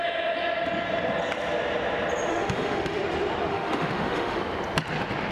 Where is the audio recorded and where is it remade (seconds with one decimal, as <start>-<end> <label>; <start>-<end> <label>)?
0.0-2.3 recorded; 2.3-3.0 remade; 3.0-3.5 recorded; 3.5-4.4 remade; 4.4-5.3 recorded